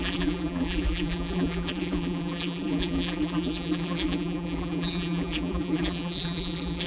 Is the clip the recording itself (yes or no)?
no